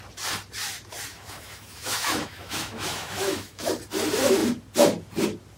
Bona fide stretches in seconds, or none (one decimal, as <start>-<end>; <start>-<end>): 0.0-1.1; 3.7-5.6